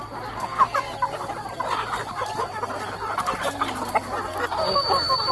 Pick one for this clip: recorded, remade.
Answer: recorded